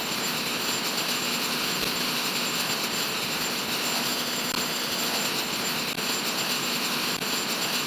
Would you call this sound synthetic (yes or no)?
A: no